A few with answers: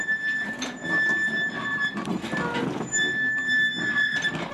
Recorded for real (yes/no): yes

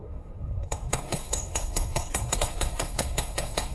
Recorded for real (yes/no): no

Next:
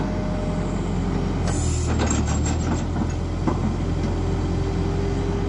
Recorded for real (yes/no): yes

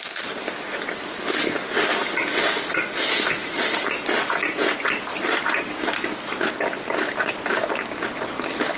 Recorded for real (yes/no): yes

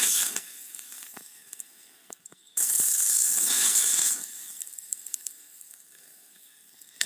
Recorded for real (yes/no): no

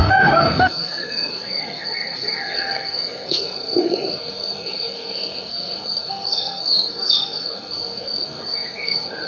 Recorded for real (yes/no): no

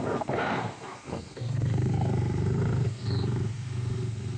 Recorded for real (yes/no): no